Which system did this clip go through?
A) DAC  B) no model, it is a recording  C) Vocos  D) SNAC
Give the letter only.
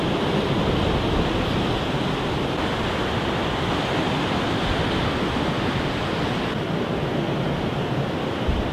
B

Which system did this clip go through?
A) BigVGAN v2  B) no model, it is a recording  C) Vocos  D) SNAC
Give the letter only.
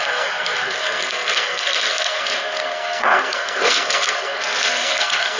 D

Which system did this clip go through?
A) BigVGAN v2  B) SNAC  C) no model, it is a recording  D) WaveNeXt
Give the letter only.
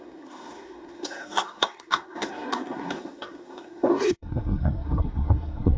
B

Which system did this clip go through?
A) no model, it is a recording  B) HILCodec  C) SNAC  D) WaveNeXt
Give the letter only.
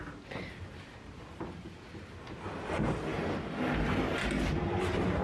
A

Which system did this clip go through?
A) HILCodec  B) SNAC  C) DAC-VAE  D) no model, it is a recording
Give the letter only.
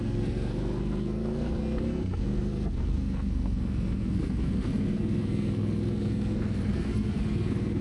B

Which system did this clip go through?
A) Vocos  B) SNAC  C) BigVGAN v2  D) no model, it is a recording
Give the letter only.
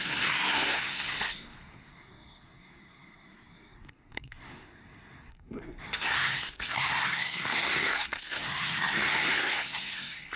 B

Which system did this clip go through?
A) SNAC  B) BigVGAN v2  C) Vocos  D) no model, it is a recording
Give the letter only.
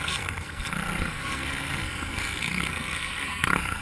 A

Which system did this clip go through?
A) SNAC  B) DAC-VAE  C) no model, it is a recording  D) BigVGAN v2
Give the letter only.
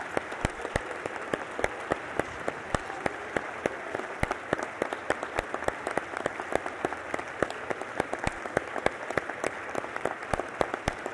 C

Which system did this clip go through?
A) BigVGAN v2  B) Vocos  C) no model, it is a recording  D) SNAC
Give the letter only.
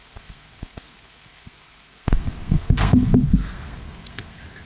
D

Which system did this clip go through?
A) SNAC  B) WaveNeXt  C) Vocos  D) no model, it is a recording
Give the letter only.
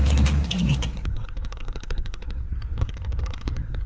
A